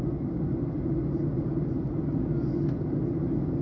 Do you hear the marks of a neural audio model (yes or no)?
no